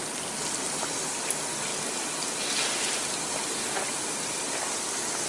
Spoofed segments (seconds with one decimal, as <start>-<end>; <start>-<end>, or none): 1.7-4.6